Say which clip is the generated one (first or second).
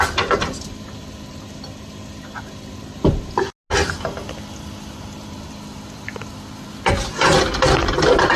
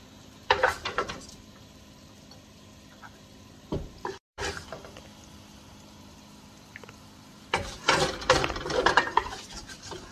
second